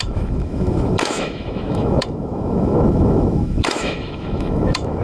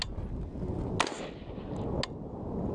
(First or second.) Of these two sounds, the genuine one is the second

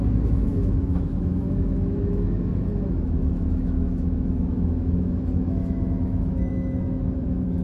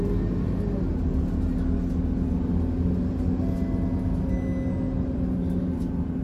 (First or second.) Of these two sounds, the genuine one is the second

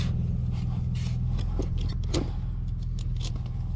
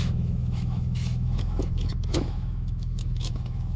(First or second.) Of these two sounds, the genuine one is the first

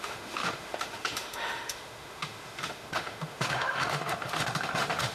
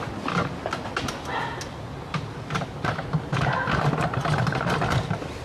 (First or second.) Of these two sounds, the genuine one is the second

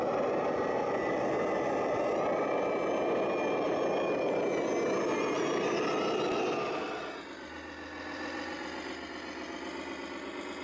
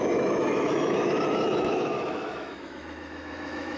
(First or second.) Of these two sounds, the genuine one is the first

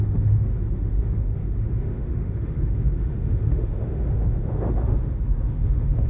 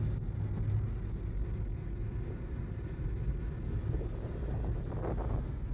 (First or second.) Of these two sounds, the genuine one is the second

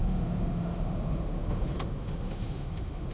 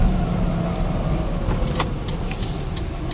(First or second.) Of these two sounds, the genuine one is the second